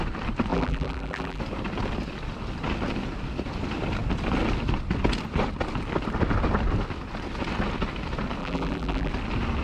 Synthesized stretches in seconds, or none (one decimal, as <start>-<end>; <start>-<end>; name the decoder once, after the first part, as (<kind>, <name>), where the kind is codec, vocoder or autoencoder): 0.5-1.4 (vocoder, BigVGAN v2); 8.4-9.1